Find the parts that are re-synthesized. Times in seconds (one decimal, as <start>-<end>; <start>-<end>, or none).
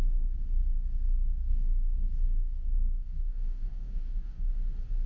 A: 1.4-4.5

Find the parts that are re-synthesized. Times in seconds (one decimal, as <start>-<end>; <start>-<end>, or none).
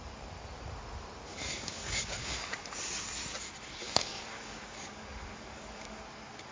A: 1.3-2.7; 3.8-6.0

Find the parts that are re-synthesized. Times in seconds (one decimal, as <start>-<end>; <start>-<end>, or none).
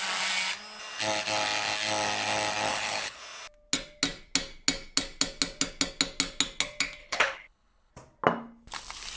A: 2.7-3.2; 7.0-7.9